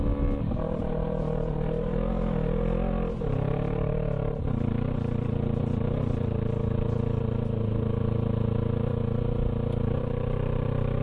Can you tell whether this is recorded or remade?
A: recorded